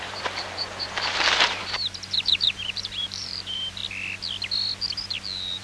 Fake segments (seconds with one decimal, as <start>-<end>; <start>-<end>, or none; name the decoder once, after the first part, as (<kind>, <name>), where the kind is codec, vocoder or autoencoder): 0.0-3.8 (vocoder, BigVGAN v2)